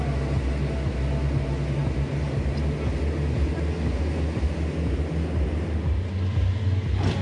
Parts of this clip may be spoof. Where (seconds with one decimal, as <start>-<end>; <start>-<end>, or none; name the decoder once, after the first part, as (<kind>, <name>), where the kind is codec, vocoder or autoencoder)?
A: none